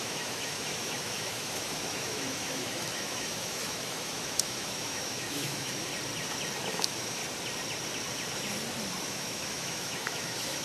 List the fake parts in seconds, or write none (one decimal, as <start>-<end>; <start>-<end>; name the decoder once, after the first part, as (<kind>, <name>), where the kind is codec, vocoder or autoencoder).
0.0-5.9 (autoencoder, DAC-VAE); 6.7-7.2; 9.0-10.6